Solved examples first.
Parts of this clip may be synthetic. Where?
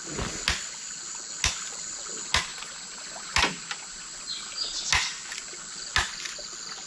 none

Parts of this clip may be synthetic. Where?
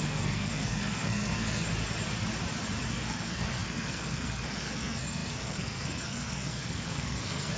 0.0-1.7; 2.9-7.6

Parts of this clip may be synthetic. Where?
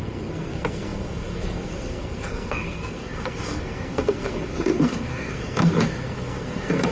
0.0-6.9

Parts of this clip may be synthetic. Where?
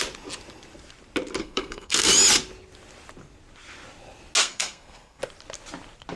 1.4-2.1; 4.4-5.2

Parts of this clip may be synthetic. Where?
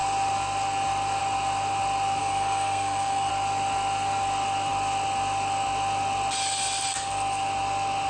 2.2-3.3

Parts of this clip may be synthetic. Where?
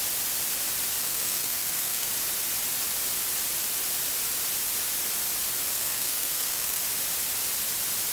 1.0-2.1; 5.7-6.8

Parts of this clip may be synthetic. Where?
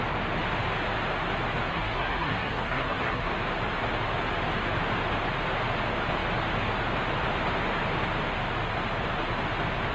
1.7-3.3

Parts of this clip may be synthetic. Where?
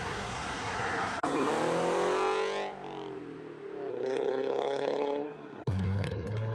0.0-1.5; 3.9-6.5